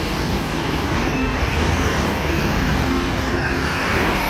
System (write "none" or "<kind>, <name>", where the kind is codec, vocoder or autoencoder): codec, DAC